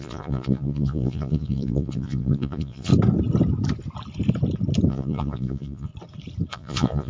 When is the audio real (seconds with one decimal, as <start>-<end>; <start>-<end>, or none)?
2.9-4.9; 5.9-6.5